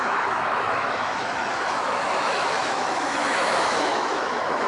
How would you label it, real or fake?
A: fake